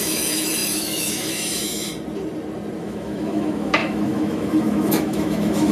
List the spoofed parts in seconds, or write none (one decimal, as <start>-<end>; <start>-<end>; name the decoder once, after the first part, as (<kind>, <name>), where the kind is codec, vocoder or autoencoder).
0.0-1.9 (autoencoder, DAC-VAE); 2.8-5.7